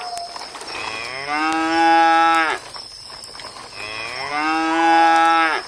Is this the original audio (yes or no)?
yes